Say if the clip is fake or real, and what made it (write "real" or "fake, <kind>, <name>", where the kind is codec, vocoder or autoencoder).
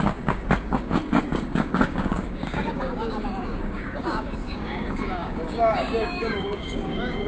fake, codec, DAC